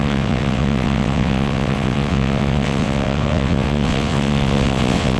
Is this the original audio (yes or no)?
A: no